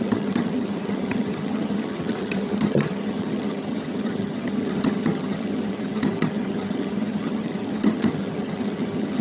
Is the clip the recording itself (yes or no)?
no